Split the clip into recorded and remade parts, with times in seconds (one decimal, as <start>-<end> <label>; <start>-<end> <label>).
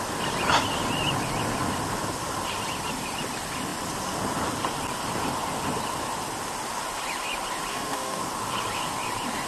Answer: 0.0-7.7 recorded; 7.7-8.2 remade; 8.2-9.5 recorded